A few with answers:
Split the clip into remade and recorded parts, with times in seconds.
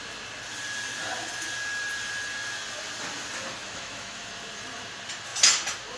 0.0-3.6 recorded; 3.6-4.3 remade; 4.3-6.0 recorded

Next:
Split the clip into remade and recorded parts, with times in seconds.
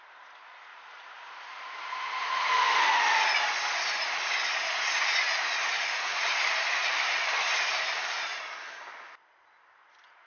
0.0-0.7 recorded; 0.7-2.2 remade; 2.2-6.1 recorded; 6.1-8.4 remade; 8.4-10.3 recorded